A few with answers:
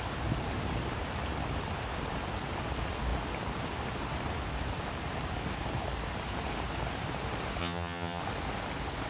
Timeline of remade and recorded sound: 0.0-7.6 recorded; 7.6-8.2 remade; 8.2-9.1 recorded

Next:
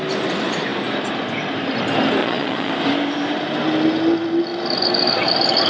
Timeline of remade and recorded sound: 0.0-2.2 recorded; 2.2-2.7 remade; 2.7-5.7 recorded

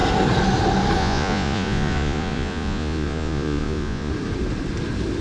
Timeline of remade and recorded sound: 0.0-1.0 recorded; 1.0-4.1 remade; 4.1-5.2 recorded

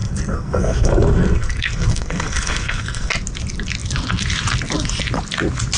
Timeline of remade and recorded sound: 0.0-3.1 remade; 3.1-5.8 recorded

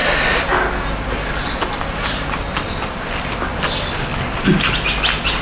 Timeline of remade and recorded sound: 0.0-5.4 recorded